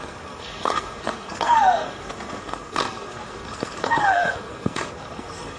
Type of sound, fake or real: fake